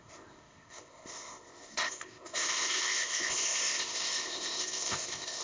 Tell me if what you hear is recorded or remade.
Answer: remade